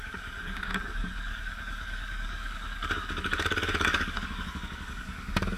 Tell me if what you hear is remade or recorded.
remade